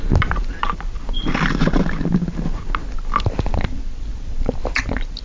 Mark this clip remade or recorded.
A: recorded